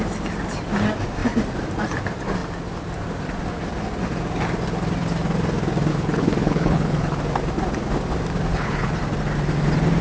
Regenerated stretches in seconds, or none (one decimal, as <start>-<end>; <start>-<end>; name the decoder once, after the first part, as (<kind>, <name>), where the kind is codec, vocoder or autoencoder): 5.9-7.2 (codec, HILCodec); 8.5-9.0